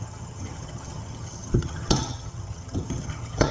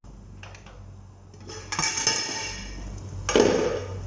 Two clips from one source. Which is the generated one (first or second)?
first